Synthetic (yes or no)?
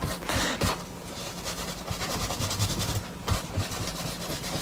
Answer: no